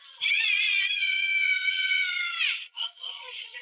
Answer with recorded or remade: remade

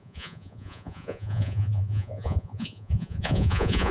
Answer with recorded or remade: remade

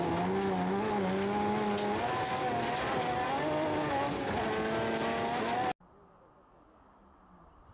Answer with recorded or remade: recorded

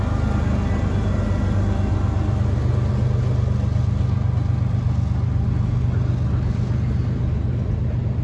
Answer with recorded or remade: recorded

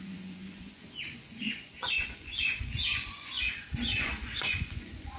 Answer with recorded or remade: remade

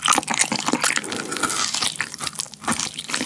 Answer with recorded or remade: recorded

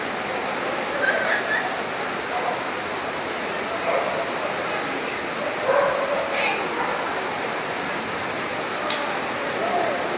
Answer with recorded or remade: recorded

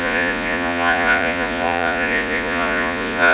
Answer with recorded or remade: remade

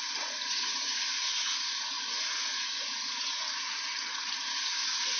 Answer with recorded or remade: remade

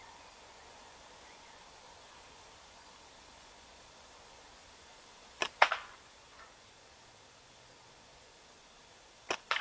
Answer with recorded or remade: remade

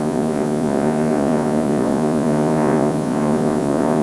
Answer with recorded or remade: remade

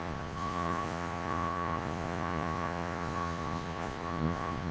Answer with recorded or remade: remade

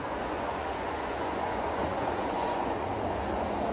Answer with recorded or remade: remade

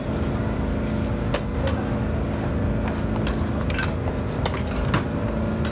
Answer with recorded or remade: recorded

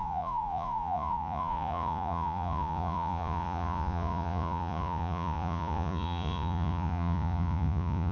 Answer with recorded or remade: remade